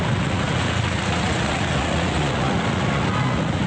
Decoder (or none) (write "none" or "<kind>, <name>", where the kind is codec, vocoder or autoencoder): vocoder, Vocos